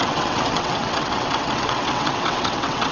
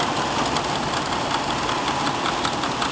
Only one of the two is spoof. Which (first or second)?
first